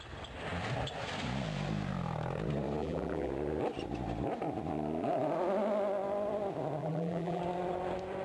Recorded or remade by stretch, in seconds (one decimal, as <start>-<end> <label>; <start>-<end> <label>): 0.0-2.8 recorded; 2.8-3.3 remade; 3.3-6.8 recorded; 6.8-7.4 remade; 7.4-8.2 recorded